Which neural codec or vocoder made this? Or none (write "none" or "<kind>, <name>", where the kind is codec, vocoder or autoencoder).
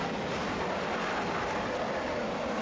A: none